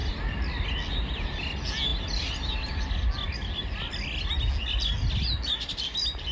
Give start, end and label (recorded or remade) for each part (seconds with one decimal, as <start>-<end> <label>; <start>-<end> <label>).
0.0-0.7 remade; 0.7-6.3 recorded